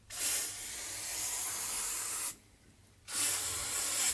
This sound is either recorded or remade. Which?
recorded